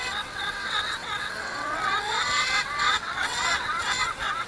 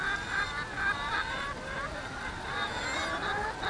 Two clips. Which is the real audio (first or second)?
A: second